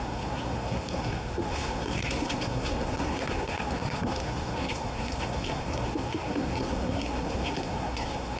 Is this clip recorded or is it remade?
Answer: remade